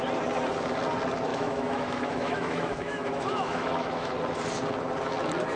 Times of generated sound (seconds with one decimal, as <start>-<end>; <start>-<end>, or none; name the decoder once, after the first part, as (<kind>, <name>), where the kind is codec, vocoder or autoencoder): 1.3-4.1 (autoencoder, DAC-VAE)